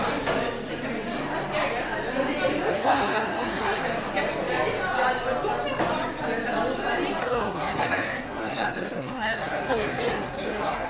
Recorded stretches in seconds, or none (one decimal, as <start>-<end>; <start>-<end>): 0.0-2.7; 3.8-7.2